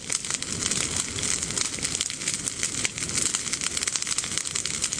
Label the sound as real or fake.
real